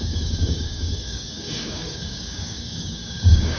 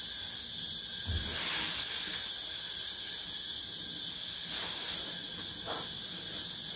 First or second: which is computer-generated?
first